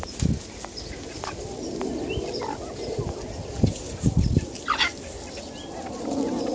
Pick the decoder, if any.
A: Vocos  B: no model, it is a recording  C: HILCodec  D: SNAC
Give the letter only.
B